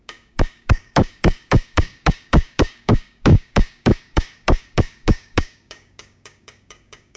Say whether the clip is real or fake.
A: fake